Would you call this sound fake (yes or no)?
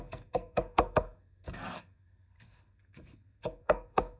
yes